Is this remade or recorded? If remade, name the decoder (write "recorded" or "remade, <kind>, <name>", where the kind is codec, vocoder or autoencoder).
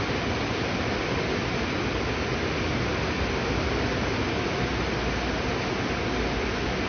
recorded